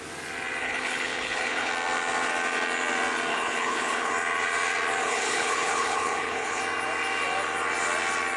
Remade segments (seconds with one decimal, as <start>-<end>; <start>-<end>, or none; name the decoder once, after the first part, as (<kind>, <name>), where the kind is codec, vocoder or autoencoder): 0.6-1.7 (codec, HILCodec); 3.3-4.1; 5.0-6.6